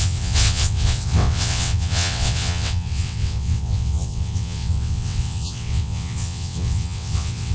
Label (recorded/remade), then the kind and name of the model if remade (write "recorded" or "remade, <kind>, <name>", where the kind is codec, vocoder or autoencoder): remade, vocoder, WaveNeXt